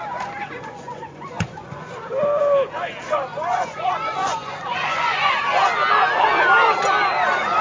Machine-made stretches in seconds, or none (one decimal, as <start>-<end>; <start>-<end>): 0.4-2.1; 3.3-5.3